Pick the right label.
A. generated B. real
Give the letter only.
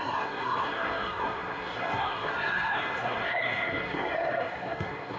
A